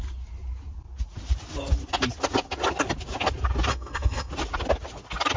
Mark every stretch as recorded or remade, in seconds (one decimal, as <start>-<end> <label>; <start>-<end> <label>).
0.0-3.7 recorded; 3.7-4.3 remade; 4.3-5.4 recorded